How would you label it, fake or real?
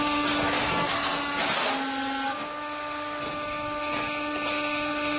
real